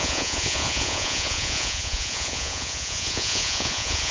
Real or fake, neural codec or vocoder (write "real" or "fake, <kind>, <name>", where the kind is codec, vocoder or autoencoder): fake, vocoder, Vocos